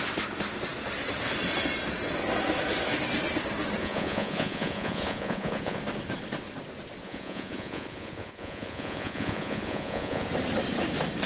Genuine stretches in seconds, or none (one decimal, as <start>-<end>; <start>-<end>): 0.0-3.8; 5.8-7.0; 10.3-11.3

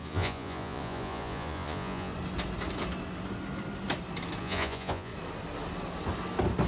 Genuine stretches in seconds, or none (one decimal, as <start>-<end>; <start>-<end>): 2.1-4.4; 5.1-6.7

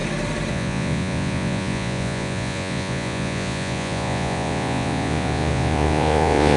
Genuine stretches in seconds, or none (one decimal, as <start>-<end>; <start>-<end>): 0.0-0.5

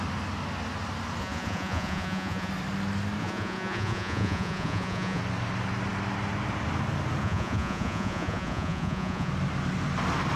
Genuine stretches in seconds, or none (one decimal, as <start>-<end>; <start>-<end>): 0.0-1.2; 2.5-3.2; 5.2-7.2; 9.3-10.4